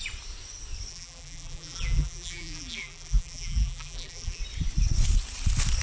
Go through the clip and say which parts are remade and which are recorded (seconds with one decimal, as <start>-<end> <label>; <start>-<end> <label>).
0.0-0.9 recorded; 0.9-4.4 remade; 4.4-5.8 recorded